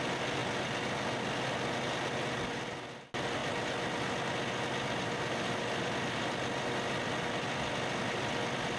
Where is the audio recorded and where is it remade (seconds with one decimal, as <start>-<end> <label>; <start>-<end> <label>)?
0.0-8.8 recorded